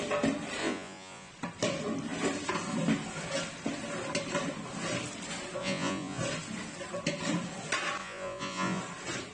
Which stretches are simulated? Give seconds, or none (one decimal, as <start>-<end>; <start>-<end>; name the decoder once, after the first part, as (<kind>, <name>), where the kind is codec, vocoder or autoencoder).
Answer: 0.6-1.3 (vocoder, Vocos); 5.6-6.2; 8.0-8.8